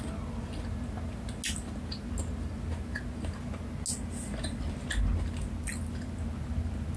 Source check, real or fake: real